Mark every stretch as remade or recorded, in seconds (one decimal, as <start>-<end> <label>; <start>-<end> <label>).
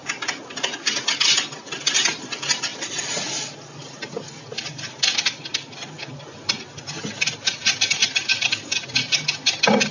0.0-9.9 recorded